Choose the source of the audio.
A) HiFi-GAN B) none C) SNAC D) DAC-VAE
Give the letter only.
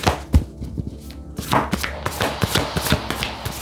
B